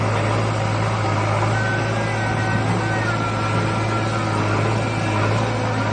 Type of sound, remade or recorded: recorded